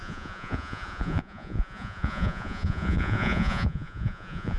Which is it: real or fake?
fake